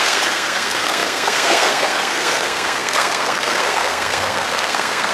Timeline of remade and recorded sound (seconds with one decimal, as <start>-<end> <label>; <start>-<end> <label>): 0.0-5.1 remade